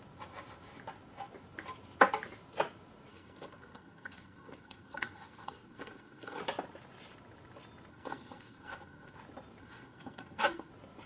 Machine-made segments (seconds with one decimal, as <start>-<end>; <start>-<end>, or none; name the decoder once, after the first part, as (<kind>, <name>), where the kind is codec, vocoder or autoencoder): 3.1-6.4 (codec, SNAC); 7.9-9.2; 9.6-10.7